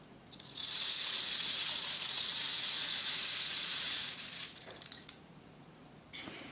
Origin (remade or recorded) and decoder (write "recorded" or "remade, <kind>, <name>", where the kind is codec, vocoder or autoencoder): remade, vocoder, Vocos